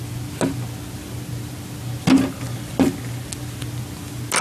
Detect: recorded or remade recorded